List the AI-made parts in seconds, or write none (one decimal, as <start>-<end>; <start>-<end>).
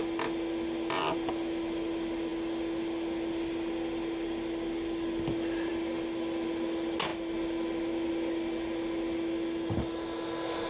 none